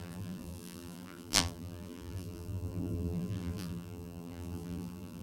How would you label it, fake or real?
fake